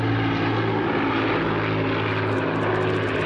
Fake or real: real